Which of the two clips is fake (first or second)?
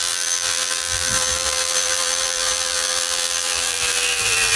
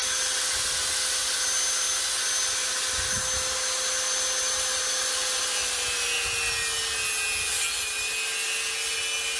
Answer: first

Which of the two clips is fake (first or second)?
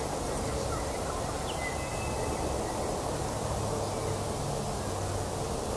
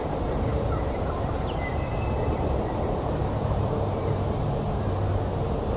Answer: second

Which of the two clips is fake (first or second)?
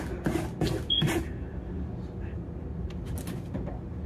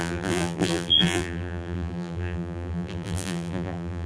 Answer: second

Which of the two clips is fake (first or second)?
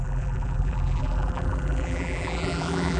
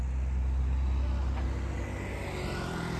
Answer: first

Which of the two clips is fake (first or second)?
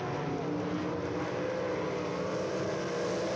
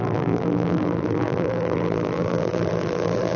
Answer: second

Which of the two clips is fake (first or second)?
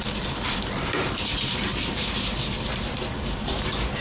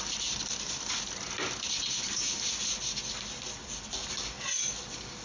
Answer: first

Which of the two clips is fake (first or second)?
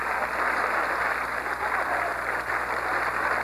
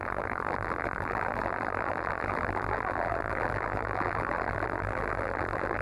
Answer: second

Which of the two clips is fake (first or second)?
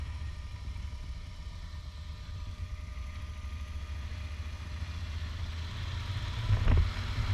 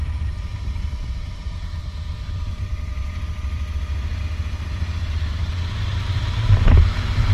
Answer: second